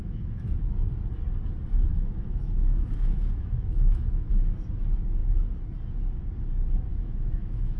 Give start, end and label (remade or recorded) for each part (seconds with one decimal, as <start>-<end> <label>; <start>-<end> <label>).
0.0-0.9 remade; 0.9-1.9 recorded; 1.9-4.3 remade; 4.3-6.9 recorded; 6.9-7.8 remade